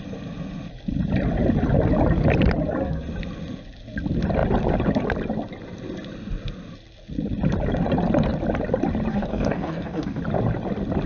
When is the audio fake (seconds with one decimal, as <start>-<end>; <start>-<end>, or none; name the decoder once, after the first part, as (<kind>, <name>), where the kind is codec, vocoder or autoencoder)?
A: 9.1-10.2 (codec, DAC)